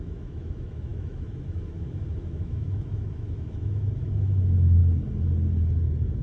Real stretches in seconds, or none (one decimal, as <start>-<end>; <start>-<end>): 4.8-6.2